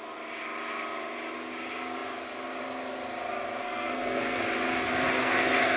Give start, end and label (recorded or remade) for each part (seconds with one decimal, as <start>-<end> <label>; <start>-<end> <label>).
0.0-3.6 recorded; 3.6-4.4 remade; 4.4-5.2 recorded; 5.2-5.8 remade